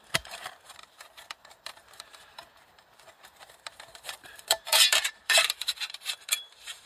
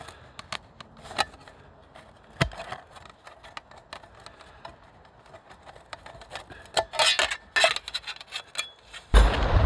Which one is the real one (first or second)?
second